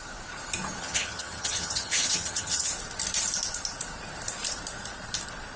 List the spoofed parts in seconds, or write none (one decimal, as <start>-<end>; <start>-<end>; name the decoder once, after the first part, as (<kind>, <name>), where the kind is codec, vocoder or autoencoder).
0.8-2.7 (vocoder, HiFi-GAN)